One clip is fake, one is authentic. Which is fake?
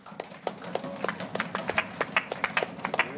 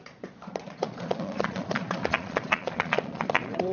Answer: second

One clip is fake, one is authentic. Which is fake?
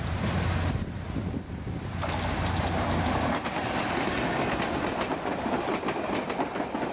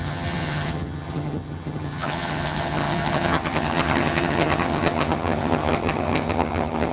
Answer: second